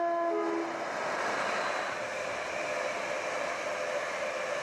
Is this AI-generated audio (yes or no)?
no